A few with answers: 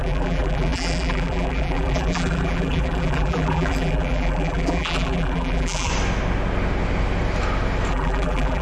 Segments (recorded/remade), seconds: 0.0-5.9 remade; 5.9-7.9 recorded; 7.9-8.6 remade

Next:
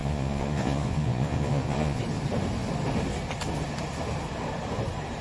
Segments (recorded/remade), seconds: 0.0-2.0 remade; 2.0-5.2 recorded